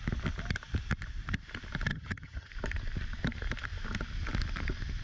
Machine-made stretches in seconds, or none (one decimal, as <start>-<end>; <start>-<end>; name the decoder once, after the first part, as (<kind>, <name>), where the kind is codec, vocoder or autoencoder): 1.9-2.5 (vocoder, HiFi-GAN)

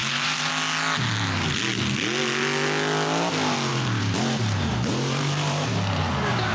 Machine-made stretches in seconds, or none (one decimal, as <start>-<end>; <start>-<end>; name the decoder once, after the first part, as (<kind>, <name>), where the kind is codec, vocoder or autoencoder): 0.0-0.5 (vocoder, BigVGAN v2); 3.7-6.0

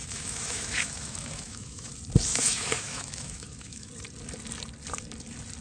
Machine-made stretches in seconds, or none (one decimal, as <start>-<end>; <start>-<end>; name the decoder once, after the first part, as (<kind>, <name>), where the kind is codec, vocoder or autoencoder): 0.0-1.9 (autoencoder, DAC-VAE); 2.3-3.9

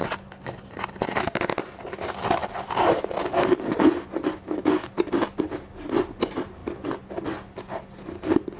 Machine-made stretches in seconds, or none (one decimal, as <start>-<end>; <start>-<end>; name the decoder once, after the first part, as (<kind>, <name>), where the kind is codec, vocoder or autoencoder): none

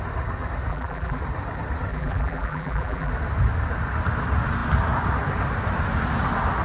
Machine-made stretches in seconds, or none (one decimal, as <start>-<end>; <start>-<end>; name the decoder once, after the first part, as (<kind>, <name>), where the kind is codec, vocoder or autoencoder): 0.7-1.2 (vocoder, BigVGAN v2); 1.9-3.1

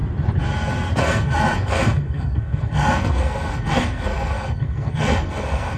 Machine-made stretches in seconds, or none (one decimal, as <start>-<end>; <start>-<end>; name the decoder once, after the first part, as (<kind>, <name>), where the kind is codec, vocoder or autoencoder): 1.0-5.8 (codec, SNAC)